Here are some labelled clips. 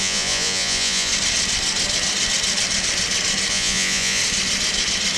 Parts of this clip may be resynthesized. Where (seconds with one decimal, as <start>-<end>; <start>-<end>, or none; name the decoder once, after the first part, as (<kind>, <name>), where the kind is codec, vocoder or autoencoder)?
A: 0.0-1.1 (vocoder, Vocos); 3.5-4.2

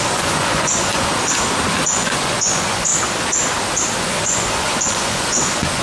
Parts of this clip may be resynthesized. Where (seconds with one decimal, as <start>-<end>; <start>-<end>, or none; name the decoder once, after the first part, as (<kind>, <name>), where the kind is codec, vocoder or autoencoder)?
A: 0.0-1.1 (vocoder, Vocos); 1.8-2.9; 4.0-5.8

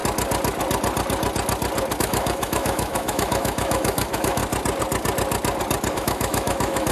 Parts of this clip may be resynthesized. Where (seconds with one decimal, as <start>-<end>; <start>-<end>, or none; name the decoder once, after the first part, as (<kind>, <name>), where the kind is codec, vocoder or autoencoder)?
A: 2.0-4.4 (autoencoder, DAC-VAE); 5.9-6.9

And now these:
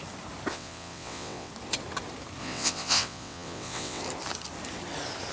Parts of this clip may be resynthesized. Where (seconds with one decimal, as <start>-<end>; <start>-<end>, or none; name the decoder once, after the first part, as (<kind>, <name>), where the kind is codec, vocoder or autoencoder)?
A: 0.5-1.5 (vocoder, WaveNeXt); 2.4-4.0

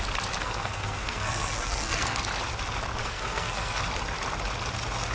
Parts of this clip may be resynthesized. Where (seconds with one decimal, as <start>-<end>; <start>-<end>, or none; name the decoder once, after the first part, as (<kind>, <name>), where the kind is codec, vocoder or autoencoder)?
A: 0.4-2.2 (codec, SNAC); 3.0-3.8

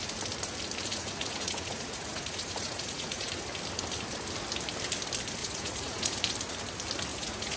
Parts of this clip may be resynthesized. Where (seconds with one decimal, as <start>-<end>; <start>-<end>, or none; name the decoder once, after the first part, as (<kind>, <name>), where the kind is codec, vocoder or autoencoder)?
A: 0.9-3.4 (vocoder, Vocos); 5.4-6.2; 7.1-7.6

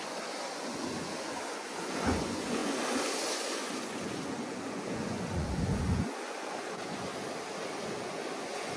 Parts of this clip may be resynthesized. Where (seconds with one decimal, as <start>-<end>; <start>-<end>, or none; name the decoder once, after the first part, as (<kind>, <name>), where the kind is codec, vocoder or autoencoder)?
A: 0.0-7.1 (vocoder, Vocos); 7.6-8.8